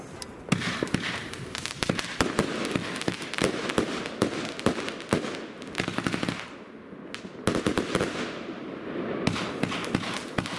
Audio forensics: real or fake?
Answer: real